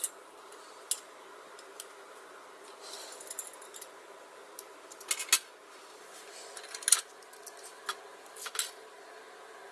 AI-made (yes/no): no